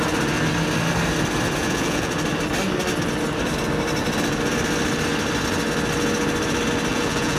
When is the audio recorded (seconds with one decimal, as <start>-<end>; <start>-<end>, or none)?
0.0-1.6; 2.1-6.9